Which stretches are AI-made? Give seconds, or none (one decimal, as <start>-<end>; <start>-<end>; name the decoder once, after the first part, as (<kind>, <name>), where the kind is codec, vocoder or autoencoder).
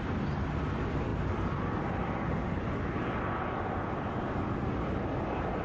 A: none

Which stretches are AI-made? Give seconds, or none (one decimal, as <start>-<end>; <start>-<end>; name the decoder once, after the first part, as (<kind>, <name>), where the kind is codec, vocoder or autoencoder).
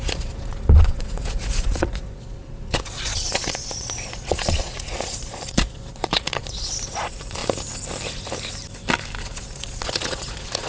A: 0.0-7.4 (vocoder, Vocos); 9.2-10.7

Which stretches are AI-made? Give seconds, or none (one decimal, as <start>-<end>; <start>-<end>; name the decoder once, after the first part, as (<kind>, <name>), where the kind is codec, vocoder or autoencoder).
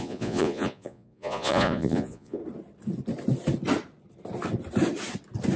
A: 0.0-2.4 (vocoder, Vocos)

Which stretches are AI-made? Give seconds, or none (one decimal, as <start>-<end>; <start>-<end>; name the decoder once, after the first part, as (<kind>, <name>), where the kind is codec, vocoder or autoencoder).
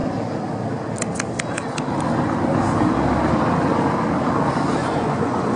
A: 4.8-5.6 (vocoder, Vocos)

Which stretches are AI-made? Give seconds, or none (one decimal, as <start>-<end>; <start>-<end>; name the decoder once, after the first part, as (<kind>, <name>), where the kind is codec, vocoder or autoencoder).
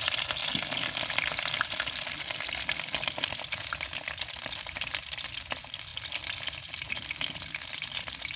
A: none